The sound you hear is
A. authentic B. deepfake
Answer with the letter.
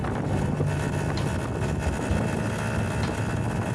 A